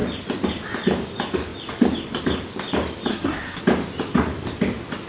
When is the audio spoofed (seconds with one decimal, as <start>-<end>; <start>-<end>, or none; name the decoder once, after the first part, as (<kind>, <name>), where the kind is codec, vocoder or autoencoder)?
3.1-3.6 (codec, SNAC)